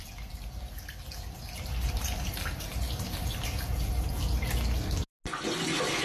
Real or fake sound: real